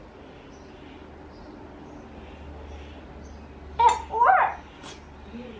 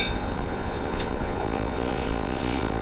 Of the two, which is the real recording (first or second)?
first